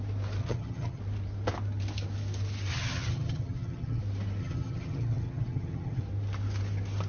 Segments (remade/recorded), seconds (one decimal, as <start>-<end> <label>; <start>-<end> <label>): 0.0-0.4 recorded; 0.4-1.0 remade; 1.0-2.7 recorded; 2.7-4.0 remade; 4.0-4.4 recorded; 4.4-6.0 remade; 6.0-7.1 recorded